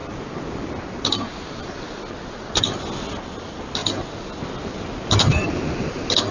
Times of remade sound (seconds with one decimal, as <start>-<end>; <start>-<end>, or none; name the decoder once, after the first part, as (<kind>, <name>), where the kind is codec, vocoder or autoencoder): none